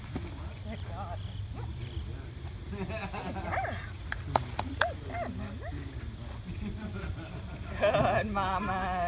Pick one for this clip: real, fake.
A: real